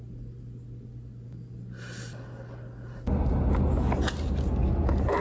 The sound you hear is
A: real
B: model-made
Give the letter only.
A